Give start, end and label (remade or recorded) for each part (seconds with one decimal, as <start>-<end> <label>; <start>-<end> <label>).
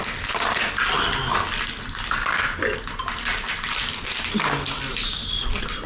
0.0-5.9 recorded